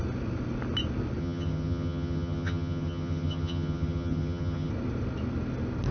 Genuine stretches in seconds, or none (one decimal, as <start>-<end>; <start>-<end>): 0.0-1.2; 4.7-5.9